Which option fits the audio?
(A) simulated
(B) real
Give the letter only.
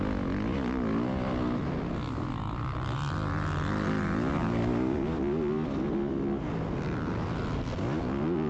B